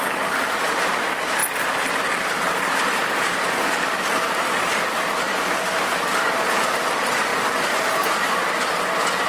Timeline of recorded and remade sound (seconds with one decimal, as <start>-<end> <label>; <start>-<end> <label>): 0.0-9.3 remade